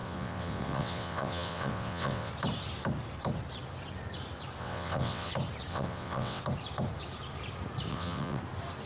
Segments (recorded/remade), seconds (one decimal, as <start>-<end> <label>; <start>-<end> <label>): 0.0-2.3 remade; 2.3-4.6 recorded; 4.6-5.3 remade; 5.3-5.7 recorded; 5.7-6.4 remade; 6.4-7.9 recorded; 7.9-8.4 remade; 8.4-8.9 recorded